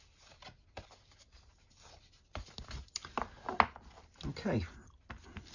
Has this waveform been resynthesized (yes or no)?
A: no